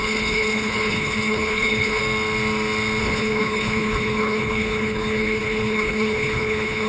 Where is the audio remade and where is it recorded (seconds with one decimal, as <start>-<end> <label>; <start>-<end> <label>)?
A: 0.0-2.0 remade; 2.0-3.0 recorded; 3.0-6.9 remade